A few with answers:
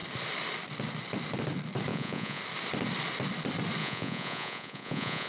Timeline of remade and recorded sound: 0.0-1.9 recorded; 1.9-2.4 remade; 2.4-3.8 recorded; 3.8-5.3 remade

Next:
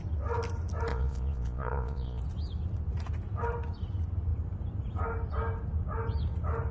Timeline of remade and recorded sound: 0.0-0.9 recorded; 0.9-2.2 remade; 2.2-6.7 recorded